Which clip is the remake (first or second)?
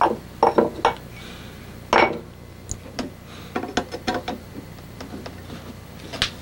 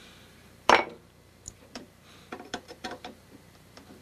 second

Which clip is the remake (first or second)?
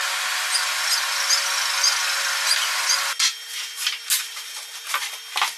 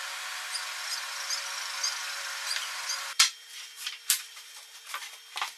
second